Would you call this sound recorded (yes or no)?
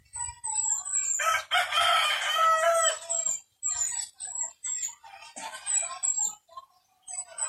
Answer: yes